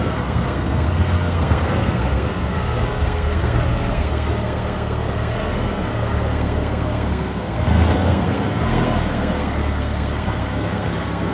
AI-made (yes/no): yes